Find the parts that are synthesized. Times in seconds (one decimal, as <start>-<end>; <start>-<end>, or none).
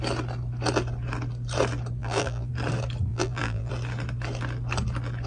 2.0-2.5; 3.1-3.7